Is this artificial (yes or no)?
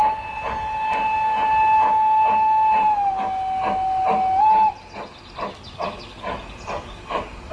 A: no